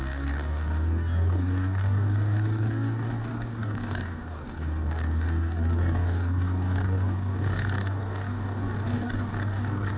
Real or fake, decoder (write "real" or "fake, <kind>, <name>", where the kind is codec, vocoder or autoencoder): fake, codec, DAC